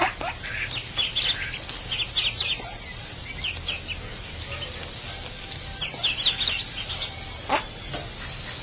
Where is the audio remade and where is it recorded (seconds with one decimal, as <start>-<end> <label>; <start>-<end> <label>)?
0.0-8.6 recorded